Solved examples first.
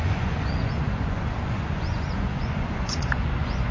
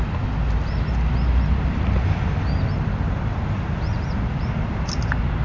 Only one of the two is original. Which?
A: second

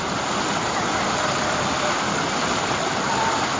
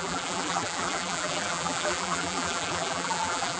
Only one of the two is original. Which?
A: first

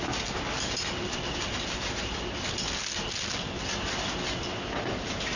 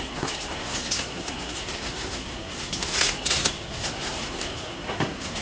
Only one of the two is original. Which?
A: first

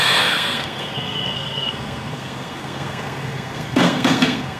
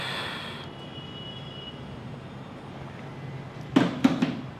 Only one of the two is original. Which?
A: second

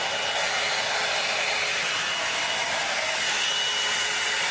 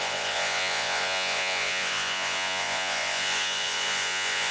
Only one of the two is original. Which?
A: first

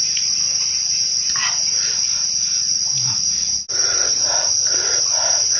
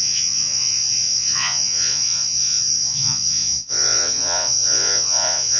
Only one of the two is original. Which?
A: first